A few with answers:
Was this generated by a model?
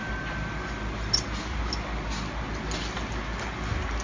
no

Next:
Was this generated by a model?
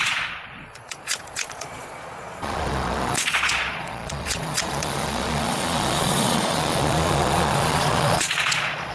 yes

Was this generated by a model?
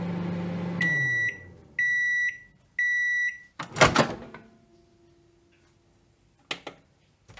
no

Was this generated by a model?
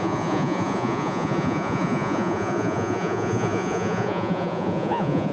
yes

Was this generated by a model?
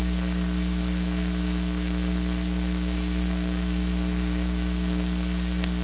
yes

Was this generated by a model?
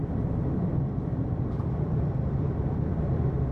yes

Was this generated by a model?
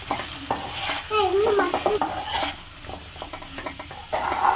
no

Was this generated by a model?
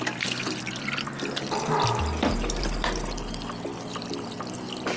no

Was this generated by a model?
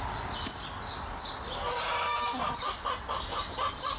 no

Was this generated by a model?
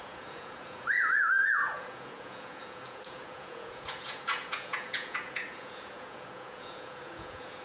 yes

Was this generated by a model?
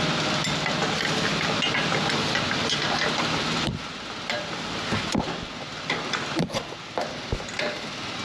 no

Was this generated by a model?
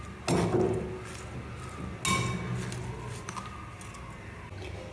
no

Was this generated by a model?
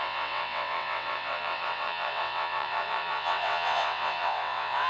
yes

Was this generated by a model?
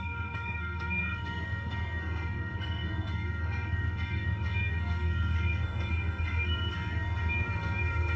yes